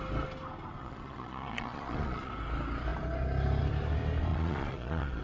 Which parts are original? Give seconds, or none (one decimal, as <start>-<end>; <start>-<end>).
0.0-0.8; 2.3-4.3